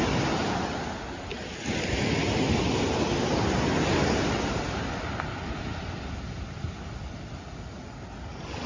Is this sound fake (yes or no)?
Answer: no